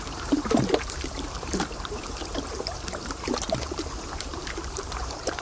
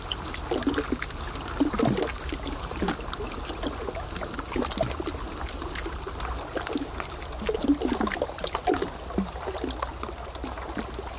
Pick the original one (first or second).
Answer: second